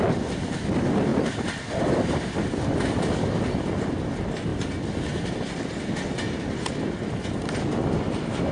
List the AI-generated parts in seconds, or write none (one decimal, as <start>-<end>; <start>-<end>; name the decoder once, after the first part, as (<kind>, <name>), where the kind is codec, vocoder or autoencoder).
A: none